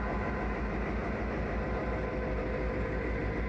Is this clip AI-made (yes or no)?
no